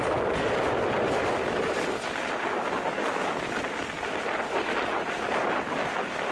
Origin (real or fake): real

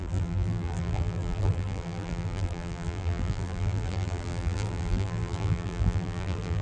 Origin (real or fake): fake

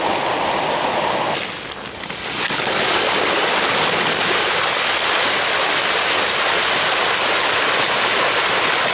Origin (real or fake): real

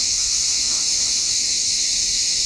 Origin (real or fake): fake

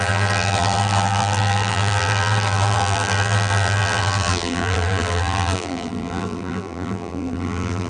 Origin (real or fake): fake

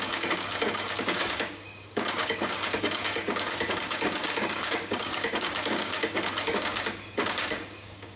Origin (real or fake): fake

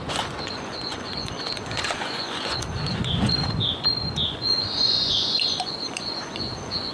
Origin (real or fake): fake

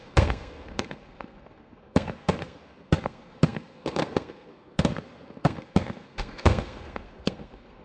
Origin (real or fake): fake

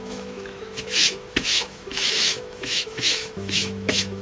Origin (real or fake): fake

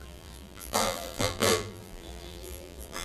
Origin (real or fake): fake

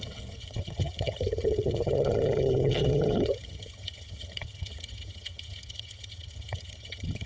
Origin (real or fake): fake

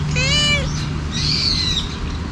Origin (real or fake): real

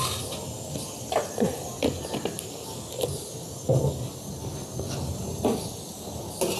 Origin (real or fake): real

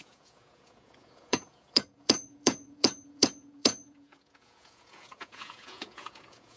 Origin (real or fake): fake